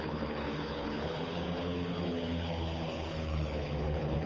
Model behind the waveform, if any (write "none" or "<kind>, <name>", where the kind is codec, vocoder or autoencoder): codec, HILCodec